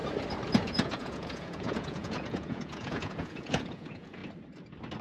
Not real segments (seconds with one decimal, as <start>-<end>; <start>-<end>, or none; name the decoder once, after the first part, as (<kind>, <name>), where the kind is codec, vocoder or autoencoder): 0.5-4.2 (vocoder, Vocos)

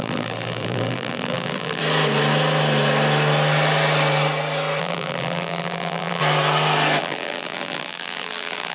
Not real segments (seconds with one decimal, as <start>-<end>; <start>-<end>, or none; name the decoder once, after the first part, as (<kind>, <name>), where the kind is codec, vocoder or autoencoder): 0.0-1.8 (vocoder, BigVGAN v2); 4.8-6.2; 7.0-8.7

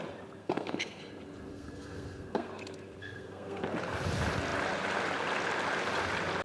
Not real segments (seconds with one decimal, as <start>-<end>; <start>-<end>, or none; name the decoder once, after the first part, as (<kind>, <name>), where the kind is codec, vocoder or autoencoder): 0.4-1.0 (codec, SNAC); 1.5-2.5; 3.0-3.6

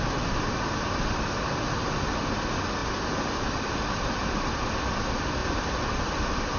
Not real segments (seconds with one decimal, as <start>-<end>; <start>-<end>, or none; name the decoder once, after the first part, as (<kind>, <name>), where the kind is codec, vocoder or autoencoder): 2.8-4.5 (vocoder, BigVGAN v2); 5.4-6.6

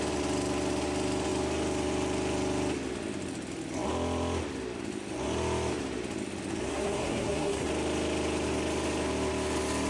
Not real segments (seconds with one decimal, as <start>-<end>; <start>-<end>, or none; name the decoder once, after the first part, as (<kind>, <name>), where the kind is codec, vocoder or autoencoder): 6.7-7.7 (codec, SNAC)

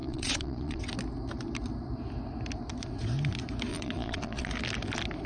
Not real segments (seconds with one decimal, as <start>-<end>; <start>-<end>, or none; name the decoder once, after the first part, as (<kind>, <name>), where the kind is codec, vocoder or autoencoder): 0.0-0.8 (vocoder, Vocos); 3.7-4.5

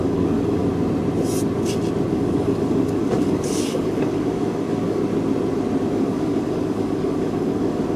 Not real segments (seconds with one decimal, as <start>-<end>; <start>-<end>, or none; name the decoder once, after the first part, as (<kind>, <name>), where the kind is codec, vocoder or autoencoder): 0.0-0.6 (codec, DAC); 2.1-5.0; 5.9-8.0

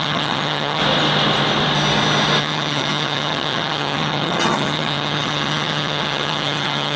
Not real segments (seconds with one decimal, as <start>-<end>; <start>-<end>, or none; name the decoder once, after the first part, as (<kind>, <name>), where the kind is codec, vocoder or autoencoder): 0.0-0.8 (vocoder, HiFi-GAN); 2.4-7.0